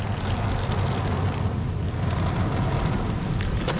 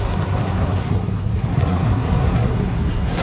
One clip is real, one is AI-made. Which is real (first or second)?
first